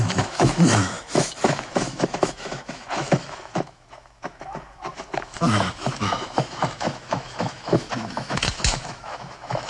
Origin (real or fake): fake